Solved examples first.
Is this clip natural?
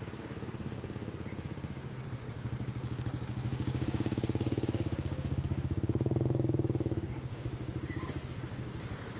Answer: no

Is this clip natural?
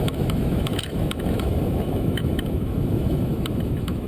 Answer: no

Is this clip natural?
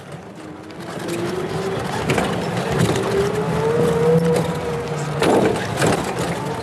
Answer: yes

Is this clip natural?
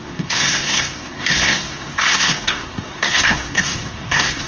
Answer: no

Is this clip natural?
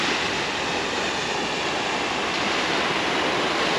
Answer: yes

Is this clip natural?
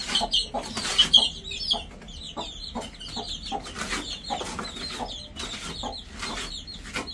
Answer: yes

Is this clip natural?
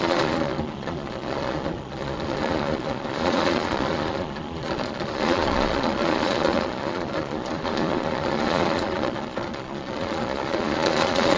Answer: no